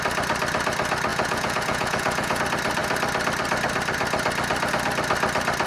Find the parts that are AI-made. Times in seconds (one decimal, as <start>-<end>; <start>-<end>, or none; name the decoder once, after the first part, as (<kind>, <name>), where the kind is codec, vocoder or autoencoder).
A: 1.1-2.4 (vocoder, Vocos)